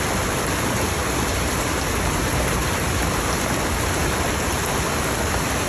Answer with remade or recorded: recorded